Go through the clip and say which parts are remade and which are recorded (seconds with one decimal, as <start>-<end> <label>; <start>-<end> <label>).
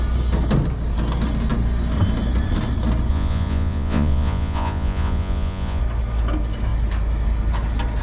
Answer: 0.0-3.1 recorded; 3.1-5.8 remade; 5.8-8.0 recorded